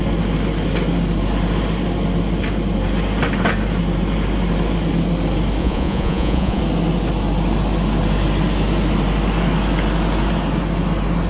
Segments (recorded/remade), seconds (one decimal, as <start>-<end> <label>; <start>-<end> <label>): 0.0-5.6 recorded; 5.6-6.6 remade; 6.6-11.3 recorded